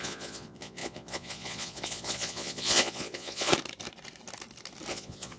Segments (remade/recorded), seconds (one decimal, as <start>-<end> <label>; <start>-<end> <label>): 0.0-3.5 remade; 3.5-4.9 recorded; 4.9-5.4 remade